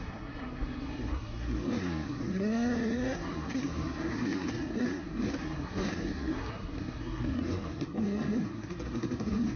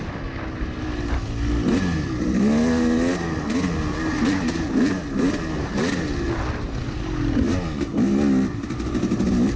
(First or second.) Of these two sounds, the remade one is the first